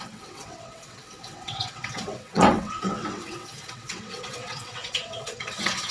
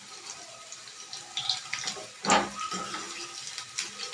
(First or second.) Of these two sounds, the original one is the second